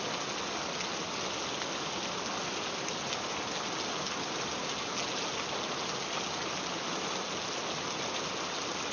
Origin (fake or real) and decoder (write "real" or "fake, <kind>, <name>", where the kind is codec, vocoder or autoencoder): real